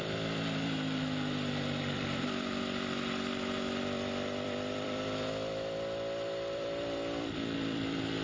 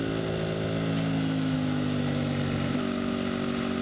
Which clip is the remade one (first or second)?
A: first